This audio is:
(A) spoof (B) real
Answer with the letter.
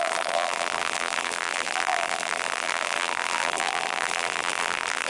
A